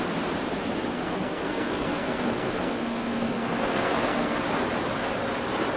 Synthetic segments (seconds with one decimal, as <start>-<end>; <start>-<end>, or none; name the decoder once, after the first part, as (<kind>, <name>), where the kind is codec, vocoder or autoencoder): 0.9-4.4 (codec, SNAC)